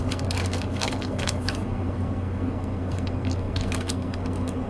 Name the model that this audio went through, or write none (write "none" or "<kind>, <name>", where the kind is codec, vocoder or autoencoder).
codec, SNAC